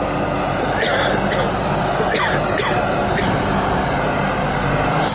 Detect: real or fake real